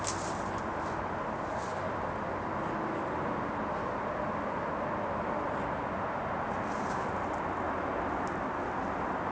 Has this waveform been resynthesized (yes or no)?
no